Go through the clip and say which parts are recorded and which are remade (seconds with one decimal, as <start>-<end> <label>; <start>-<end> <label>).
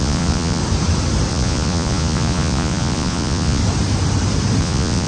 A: 0.0-0.6 remade; 0.6-1.3 recorded; 1.3-3.6 remade; 3.6-4.6 recorded; 4.6-5.1 remade